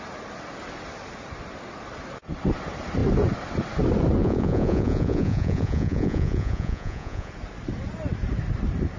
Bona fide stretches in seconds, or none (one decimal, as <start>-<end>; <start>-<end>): 0.0-4.2; 7.3-9.0